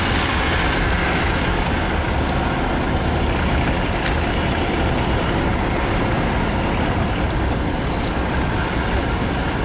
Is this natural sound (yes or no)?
yes